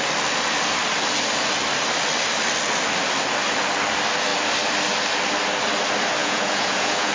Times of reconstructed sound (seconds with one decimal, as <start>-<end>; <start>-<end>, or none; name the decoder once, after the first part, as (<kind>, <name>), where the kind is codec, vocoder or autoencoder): 6.2-7.1 (vocoder, Vocos)

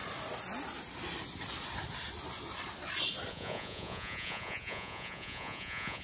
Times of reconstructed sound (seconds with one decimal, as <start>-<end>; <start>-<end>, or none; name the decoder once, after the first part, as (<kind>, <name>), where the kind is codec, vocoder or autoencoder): 3.3-6.0 (vocoder, Vocos)